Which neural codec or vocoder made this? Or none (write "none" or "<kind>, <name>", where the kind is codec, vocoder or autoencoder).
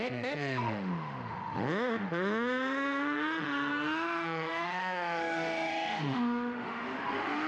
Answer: autoencoder, DAC-VAE